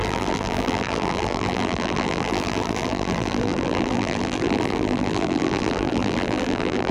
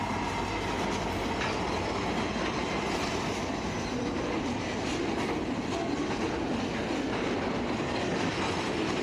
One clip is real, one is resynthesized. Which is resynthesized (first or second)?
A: first